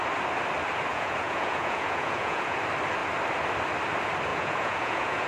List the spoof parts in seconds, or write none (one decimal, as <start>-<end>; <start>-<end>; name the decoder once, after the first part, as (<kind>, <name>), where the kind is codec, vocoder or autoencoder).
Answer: 0.9-2.6 (vocoder, Vocos); 4.3-5.3